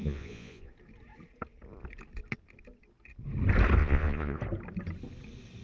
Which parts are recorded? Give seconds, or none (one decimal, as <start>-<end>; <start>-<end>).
0.7-3.8; 4.4-5.6